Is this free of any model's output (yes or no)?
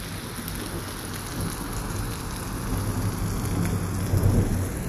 yes